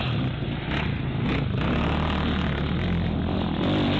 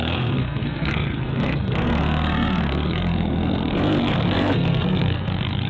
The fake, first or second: second